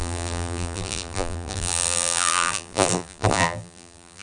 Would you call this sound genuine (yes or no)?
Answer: no